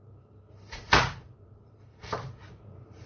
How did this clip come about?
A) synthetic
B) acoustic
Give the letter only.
A